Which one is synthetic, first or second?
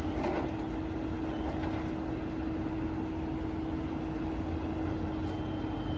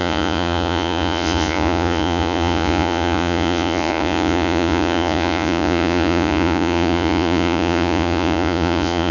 second